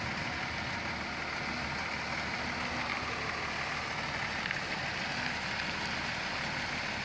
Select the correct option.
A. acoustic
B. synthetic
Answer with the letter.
A